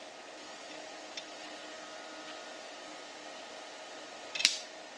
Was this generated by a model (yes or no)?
no